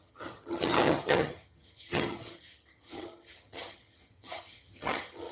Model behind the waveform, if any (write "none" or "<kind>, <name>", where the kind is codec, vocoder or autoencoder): vocoder, HiFi-GAN